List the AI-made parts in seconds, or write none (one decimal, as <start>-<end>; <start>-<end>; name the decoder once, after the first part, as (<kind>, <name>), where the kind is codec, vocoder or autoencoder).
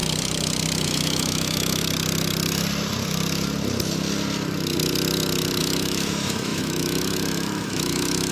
0.8-1.8 (autoencoder, DAC-VAE); 5.6-8.3